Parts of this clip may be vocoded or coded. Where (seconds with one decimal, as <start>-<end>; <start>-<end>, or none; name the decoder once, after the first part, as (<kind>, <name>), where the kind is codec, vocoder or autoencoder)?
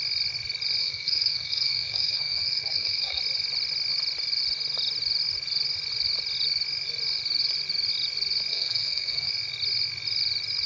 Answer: 0.8-3.2 (codec, SNAC); 8.5-9.3